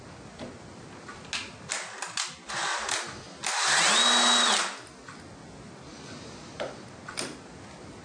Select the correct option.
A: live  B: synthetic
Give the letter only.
A